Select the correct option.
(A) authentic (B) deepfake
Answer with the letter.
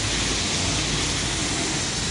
A